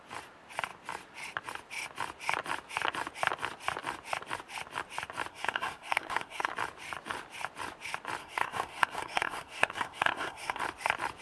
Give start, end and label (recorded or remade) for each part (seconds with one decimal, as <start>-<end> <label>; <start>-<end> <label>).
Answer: 0.0-5.3 recorded; 5.3-6.5 remade; 6.5-8.2 recorded; 8.2-10.6 remade; 10.6-11.2 recorded